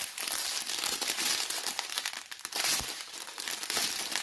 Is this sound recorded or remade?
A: recorded